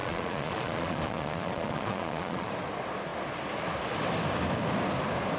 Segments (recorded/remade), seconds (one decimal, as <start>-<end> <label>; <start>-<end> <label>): 0.0-2.5 remade; 2.5-5.4 recorded